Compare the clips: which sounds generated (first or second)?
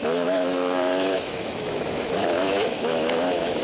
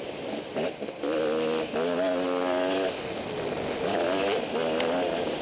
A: first